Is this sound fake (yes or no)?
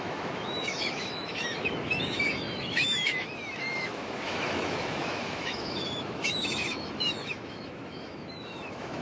yes